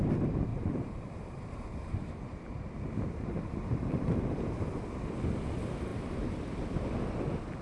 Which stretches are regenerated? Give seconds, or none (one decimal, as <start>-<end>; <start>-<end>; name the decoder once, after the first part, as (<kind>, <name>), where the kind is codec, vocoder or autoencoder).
0.5-4.4 (vocoder, BigVGAN v2)